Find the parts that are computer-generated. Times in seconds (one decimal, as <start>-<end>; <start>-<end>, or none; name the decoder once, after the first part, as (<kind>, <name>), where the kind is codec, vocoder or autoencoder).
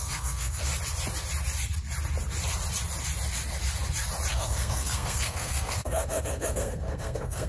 0.0-0.7 (codec, SNAC); 4.3-7.5